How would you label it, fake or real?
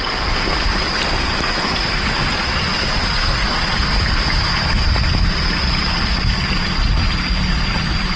real